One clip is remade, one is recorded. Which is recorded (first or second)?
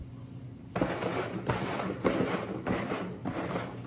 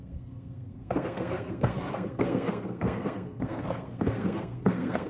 first